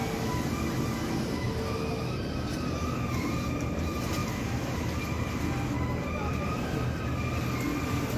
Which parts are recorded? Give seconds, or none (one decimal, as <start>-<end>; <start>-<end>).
0.0-8.2